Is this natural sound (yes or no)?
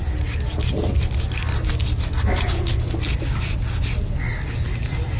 yes